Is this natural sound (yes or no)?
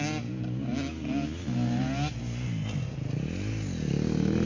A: yes